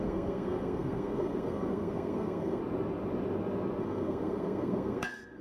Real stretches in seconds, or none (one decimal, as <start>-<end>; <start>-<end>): 2.6-3.8